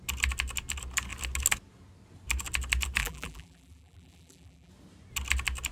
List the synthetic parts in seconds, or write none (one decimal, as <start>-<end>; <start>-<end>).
3.0-4.7